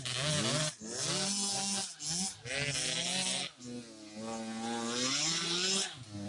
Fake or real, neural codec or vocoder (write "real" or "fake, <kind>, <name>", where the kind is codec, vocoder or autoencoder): real